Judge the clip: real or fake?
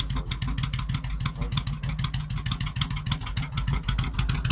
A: real